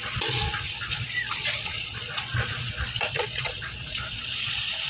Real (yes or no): no